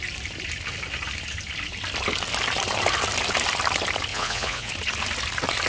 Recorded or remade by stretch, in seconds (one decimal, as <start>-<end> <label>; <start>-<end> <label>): 0.0-4.1 recorded; 4.1-4.7 remade; 4.7-5.7 recorded